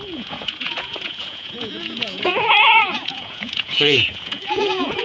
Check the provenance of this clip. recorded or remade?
remade